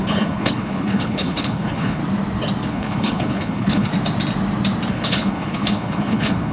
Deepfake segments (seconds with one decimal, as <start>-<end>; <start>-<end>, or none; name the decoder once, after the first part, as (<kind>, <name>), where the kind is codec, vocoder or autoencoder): 0.0-2.0 (codec, HILCodec); 2.7-3.9; 4.9-6.5